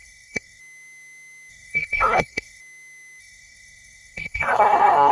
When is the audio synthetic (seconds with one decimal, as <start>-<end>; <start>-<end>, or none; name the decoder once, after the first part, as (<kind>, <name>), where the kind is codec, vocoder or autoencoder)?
0.0-0.6 (codec, SNAC); 1.5-2.6; 3.2-5.1